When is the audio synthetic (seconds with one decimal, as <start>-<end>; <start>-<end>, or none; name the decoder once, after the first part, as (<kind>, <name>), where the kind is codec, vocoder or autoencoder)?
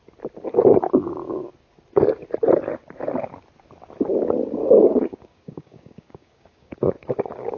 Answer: 4.6-7.6 (codec, DAC)